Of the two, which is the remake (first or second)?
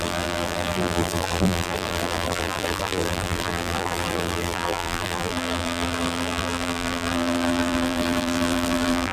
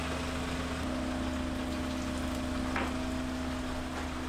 first